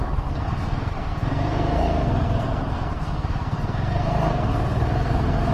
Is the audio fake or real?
fake